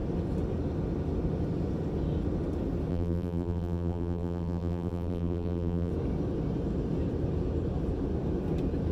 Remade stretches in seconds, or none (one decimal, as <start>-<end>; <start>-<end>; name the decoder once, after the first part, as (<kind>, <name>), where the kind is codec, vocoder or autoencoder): 2.9-5.9 (vocoder, BigVGAN v2)